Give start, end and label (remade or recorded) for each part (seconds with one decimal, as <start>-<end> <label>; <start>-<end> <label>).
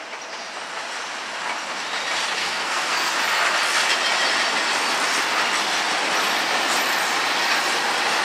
0.0-2.4 recorded; 2.4-3.1 remade; 3.1-8.2 recorded